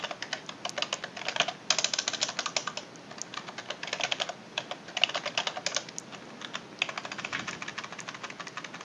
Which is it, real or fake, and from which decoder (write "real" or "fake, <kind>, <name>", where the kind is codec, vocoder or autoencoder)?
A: real